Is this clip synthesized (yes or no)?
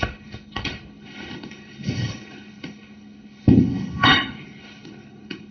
yes